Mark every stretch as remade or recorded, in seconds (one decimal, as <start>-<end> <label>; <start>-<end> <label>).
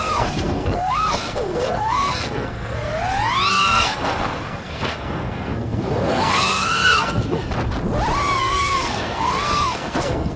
0.0-2.9 remade; 2.9-3.5 recorded; 3.5-7.4 remade; 7.4-8.4 recorded; 8.4-10.4 remade